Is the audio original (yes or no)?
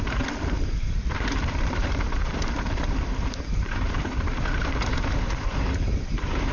no